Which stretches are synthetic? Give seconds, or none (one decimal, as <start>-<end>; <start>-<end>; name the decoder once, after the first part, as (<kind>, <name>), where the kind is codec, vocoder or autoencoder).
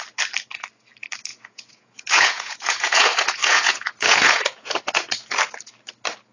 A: 1.3-5.1 (vocoder, Vocos)